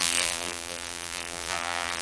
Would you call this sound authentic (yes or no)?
no